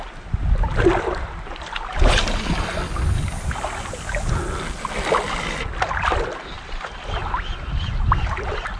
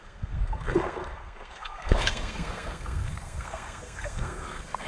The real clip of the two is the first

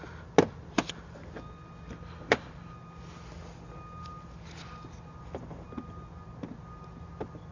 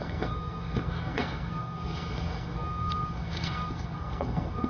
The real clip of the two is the first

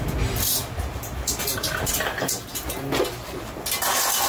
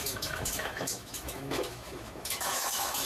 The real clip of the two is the first